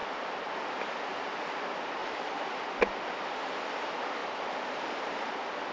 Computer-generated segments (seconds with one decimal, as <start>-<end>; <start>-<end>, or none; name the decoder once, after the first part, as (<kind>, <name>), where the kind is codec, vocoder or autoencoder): 0.0-0.5 (vocoder, BigVGAN v2); 2.0-3.4; 4.2-5.3